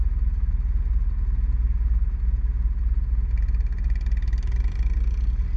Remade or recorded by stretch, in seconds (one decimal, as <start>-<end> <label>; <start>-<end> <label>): 0.0-5.6 recorded